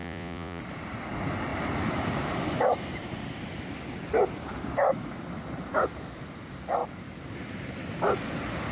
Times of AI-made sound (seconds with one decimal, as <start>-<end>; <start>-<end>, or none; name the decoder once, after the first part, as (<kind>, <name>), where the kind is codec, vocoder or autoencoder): 0.0-0.6 (vocoder, Vocos)